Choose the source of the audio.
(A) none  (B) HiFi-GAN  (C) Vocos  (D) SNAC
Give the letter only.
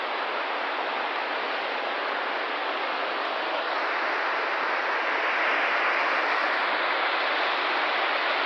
A